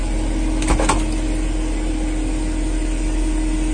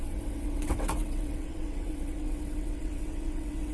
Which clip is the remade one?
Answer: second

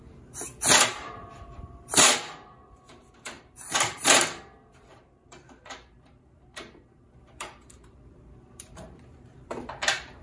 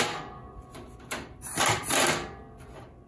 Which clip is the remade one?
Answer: first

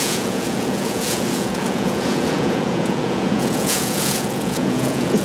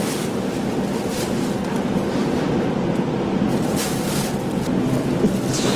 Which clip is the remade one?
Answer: first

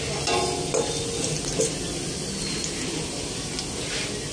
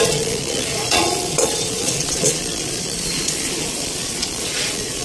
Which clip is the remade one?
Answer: second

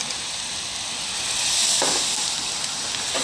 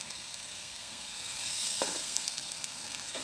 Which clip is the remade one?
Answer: second